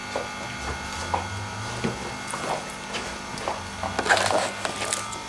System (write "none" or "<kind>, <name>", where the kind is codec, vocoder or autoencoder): none